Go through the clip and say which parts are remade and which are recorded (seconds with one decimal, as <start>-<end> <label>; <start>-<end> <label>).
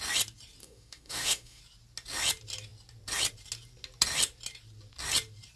0.0-0.6 recorded; 0.6-1.6 remade; 1.6-5.6 recorded